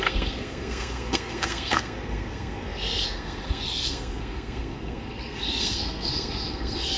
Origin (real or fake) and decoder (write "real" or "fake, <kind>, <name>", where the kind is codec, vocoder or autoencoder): fake, codec, SNAC